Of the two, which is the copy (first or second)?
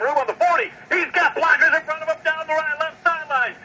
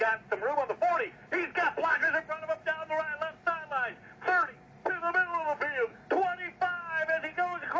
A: first